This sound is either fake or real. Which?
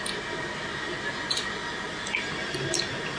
real